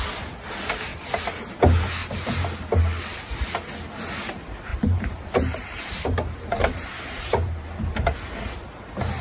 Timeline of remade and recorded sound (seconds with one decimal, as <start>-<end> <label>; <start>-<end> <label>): 0.0-0.9 recorded; 0.9-1.6 remade; 1.6-2.0 recorded; 2.0-2.8 remade; 2.8-4.7 recorded; 4.7-8.3 remade; 8.3-9.2 recorded